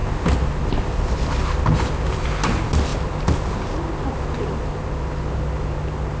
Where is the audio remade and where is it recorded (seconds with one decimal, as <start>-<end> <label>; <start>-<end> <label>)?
0.0-6.2 recorded